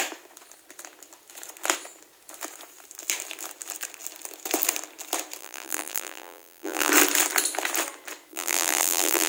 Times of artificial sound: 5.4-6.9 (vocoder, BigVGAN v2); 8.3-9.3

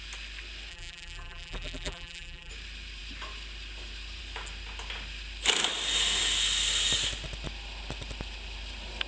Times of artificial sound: 0.7-2.5 (vocoder, BigVGAN v2)

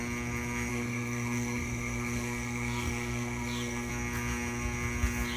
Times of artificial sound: 0.7-3.9 (codec, SNAC)

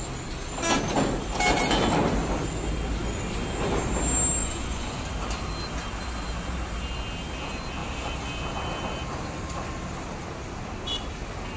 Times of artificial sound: 4.4-5.0 (vocoder, Vocos)

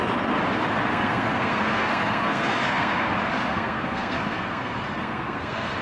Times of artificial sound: 0.9-3.1 (codec, SNAC); 3.5-5.8

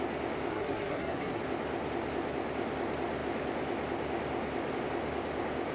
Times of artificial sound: 0.5-1.4 (codec, SNAC)